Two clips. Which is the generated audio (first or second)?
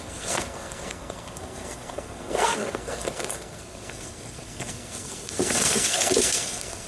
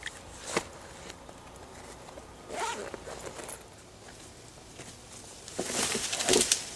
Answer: first